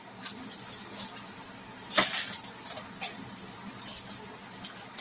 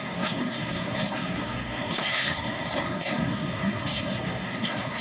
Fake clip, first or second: second